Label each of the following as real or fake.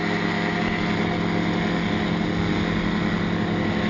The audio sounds real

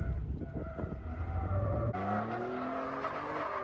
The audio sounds real